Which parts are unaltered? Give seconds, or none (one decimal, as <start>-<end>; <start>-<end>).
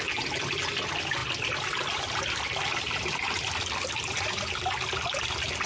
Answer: 0.0-1.2; 3.6-5.7